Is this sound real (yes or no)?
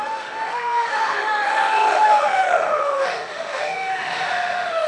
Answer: no